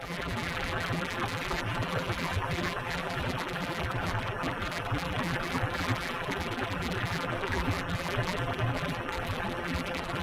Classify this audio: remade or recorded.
remade